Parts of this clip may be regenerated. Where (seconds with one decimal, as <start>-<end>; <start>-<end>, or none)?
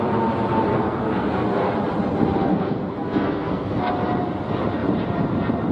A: 0.7-1.7; 2.5-3.9